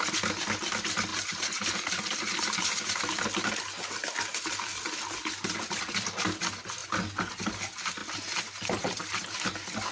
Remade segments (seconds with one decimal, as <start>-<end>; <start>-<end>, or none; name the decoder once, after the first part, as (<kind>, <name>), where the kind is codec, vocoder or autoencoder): none